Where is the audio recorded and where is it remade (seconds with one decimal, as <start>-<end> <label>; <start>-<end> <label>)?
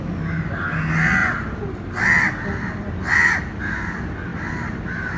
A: 0.0-5.2 recorded